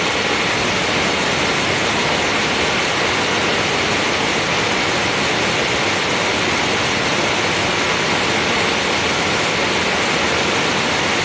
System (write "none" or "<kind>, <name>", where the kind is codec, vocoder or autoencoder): none